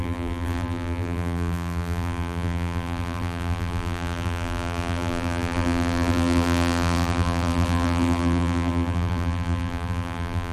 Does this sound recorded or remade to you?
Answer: remade